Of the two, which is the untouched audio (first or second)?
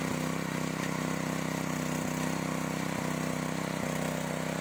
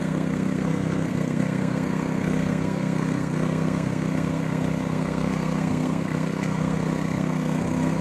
first